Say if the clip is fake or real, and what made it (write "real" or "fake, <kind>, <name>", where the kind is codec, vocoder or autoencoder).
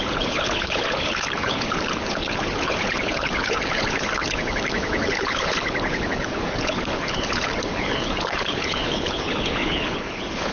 fake, codec, HILCodec